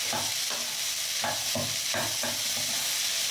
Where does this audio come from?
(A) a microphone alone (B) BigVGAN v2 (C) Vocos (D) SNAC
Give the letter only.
A